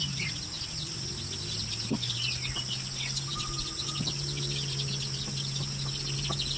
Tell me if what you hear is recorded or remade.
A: recorded